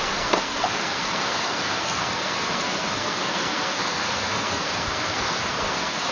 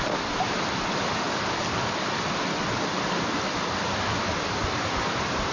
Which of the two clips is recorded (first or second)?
second